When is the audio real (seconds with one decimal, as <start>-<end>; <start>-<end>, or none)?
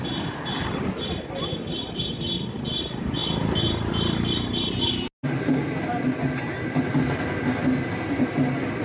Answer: 0.0-8.8